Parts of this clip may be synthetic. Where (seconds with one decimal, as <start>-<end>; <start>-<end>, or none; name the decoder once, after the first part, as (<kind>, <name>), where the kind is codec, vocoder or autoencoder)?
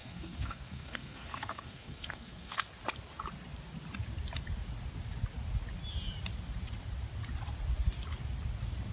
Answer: 0.0-2.7 (codec, SNAC)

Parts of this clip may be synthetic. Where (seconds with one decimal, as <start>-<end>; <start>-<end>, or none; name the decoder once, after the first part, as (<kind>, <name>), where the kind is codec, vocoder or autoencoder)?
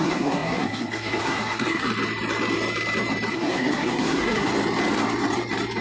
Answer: 0.0-1.9 (codec, SNAC); 3.3-4.5